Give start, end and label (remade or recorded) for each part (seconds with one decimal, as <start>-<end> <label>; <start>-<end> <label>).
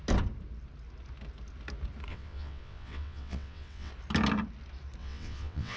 0.0-2.1 recorded; 2.1-3.9 remade; 3.9-5.0 recorded; 5.0-5.8 remade